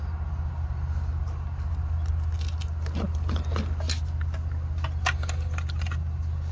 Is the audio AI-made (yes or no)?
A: no